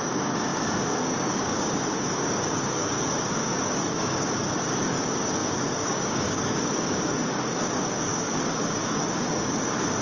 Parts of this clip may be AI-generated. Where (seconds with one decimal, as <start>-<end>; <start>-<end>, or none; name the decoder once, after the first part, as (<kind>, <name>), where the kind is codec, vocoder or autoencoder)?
0.0-10.0 (codec, DAC)